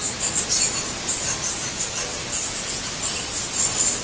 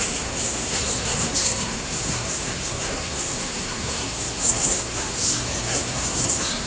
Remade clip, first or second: second